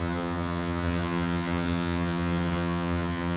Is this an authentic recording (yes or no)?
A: no